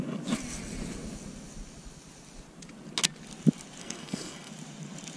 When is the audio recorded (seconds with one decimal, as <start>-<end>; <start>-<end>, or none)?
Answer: 0.0-3.8; 4.5-5.2